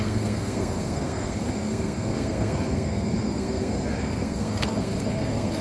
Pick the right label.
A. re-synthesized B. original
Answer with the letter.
A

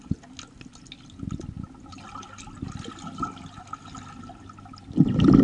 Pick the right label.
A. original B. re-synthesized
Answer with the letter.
A